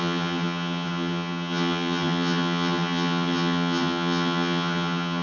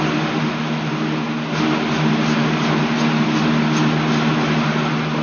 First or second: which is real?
second